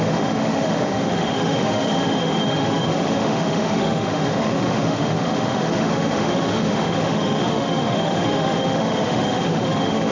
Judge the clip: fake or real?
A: fake